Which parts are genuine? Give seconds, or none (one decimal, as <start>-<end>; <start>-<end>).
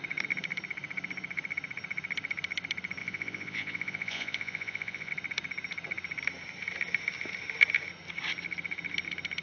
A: 0.0-3.0; 5.1-9.4